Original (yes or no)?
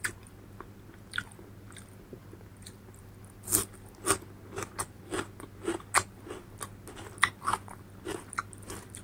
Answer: yes